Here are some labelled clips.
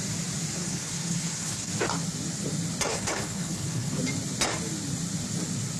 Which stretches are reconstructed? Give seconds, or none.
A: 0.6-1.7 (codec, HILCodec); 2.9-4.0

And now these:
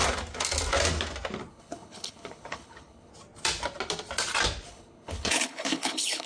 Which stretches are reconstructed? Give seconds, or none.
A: 1.5-3.1 (codec, HILCodec); 4.7-6.3

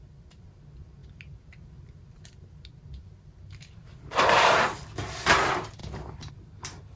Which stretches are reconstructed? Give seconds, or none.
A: none

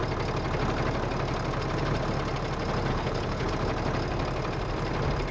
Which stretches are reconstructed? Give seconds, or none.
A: 2.9-3.5 (codec, HILCodec)

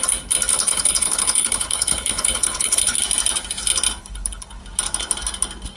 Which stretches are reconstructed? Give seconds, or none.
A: 0.5-3.0 (codec, HILCodec); 4.0-4.6